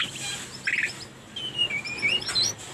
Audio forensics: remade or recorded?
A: remade